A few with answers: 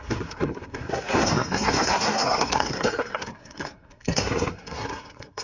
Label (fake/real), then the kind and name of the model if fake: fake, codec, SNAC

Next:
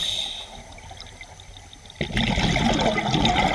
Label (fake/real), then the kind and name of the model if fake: real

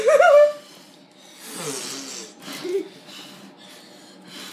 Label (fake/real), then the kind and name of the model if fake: real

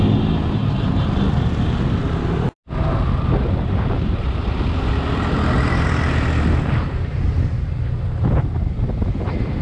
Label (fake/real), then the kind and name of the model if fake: real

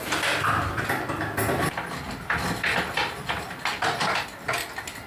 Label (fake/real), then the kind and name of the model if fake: real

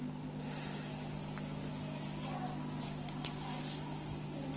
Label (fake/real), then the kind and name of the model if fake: real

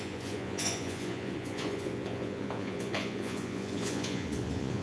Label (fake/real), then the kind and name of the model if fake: fake, vocoder, Vocos